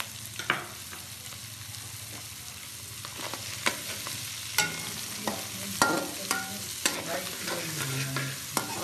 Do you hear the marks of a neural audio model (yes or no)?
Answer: no